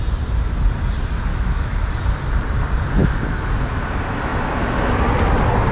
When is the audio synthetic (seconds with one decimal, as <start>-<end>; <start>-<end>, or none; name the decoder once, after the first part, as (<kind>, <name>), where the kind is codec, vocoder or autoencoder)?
1.3-1.9 (autoencoder, DAC-VAE); 3.0-3.5

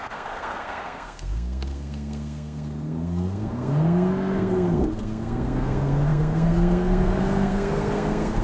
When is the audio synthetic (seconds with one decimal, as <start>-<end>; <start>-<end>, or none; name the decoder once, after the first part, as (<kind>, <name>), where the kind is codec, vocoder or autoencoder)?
0.0-8.4 (codec, SNAC)